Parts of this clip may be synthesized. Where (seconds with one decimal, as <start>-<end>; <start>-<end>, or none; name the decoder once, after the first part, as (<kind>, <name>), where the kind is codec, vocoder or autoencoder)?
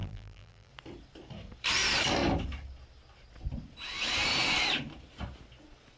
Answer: 0.0-0.7 (vocoder, BigVGAN v2)